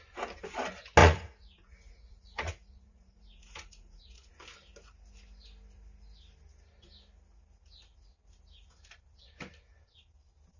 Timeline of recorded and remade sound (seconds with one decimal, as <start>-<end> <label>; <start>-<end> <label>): 0.0-1.0 recorded; 1.0-4.3 remade; 4.3-10.6 recorded